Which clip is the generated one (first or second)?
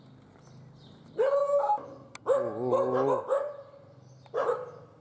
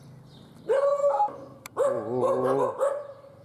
second